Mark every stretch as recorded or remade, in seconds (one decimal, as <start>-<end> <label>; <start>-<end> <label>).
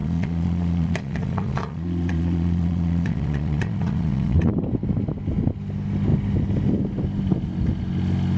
0.0-4.5 remade; 4.5-8.4 recorded